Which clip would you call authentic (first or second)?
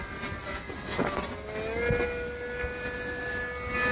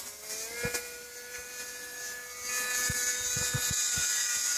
first